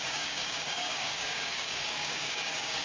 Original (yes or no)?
no